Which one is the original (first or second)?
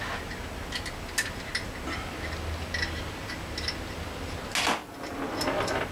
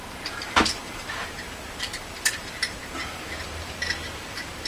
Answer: first